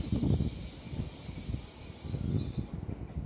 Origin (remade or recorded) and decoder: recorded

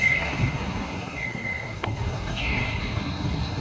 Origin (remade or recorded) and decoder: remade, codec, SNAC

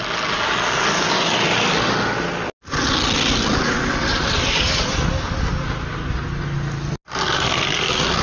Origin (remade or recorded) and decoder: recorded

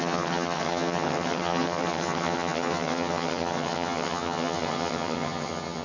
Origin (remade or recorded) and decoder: remade, vocoder, HiFi-GAN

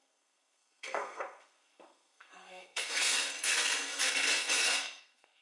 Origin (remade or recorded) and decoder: remade, codec, SNAC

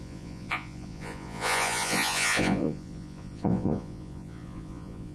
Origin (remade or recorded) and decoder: remade, vocoder, Vocos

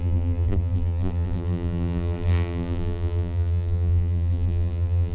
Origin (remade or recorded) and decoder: remade, vocoder, BigVGAN v2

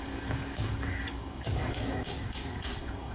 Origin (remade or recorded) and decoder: remade, codec, DAC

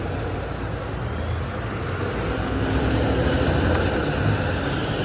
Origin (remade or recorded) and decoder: recorded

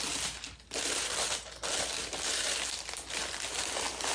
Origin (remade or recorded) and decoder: recorded